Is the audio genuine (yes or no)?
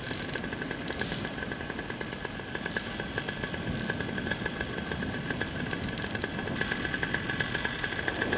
yes